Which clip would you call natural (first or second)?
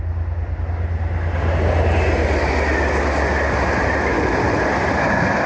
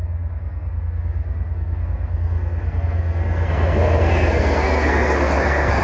first